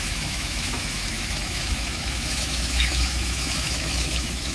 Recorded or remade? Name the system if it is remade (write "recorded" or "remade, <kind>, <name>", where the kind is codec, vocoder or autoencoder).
remade, autoencoder, DAC-VAE